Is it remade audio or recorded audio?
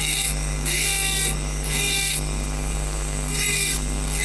remade